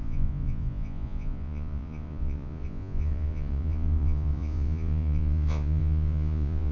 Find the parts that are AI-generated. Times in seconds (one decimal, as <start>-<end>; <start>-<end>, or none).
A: 0.0-6.7